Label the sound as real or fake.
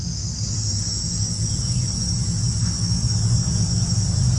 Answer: real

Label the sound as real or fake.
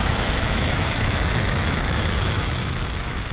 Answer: fake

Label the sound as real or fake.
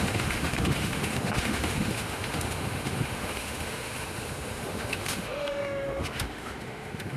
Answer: fake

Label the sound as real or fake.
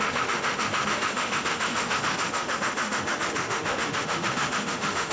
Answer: fake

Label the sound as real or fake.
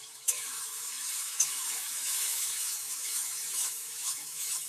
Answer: fake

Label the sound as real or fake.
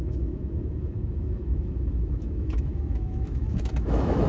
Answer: fake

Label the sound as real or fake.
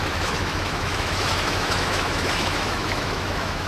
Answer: fake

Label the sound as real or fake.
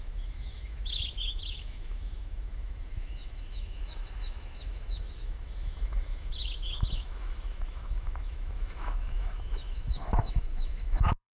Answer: fake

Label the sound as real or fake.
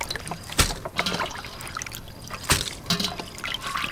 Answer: real